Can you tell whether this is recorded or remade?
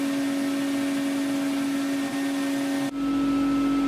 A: recorded